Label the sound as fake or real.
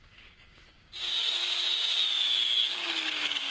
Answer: fake